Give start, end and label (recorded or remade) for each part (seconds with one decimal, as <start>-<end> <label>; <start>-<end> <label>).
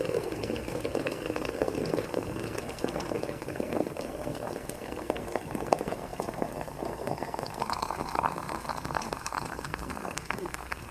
0.0-10.9 remade